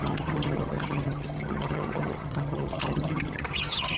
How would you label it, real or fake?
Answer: fake